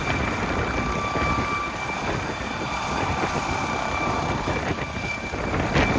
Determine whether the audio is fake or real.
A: real